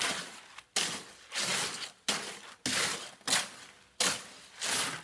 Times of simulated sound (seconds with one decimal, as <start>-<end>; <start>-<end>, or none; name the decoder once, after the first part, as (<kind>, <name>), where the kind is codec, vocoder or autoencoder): none